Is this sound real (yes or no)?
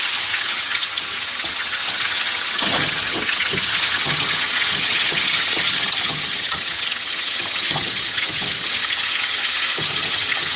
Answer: no